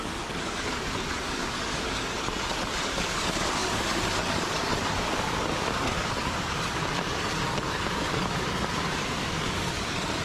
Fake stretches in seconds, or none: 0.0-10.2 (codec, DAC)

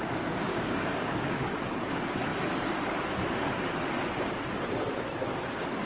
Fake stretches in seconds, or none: 0.5-1.6 (codec, DAC)

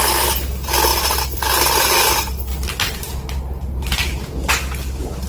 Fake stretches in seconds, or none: none